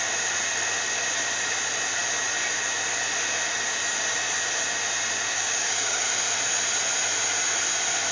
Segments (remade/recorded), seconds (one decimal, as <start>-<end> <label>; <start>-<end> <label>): 0.0-5.3 recorded; 5.3-6.1 remade; 6.1-8.1 recorded